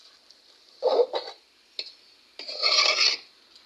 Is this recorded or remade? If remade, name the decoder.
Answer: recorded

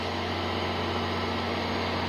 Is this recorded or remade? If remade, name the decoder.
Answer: recorded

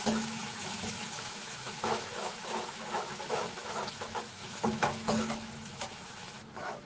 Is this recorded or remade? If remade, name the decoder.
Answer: remade, autoencoder, DAC-VAE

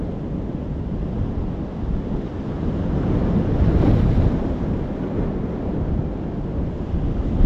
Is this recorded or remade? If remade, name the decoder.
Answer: recorded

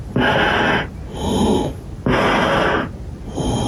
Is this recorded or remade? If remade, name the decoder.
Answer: recorded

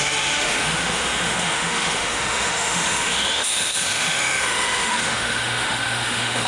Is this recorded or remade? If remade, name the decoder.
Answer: remade, autoencoder, DAC-VAE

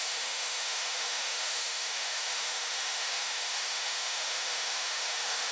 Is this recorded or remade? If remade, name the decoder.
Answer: remade, autoencoder, DAC-VAE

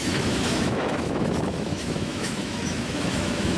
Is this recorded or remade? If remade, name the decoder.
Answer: remade, autoencoder, DAC-VAE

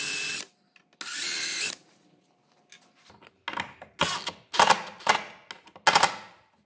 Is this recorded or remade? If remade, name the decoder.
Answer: recorded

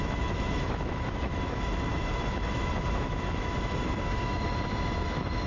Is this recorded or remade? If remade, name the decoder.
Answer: remade, autoencoder, DAC-VAE